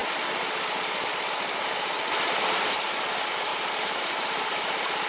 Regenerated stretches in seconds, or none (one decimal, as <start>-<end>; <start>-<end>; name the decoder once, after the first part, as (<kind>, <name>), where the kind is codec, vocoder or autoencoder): 3.5-5.1 (vocoder, BigVGAN v2)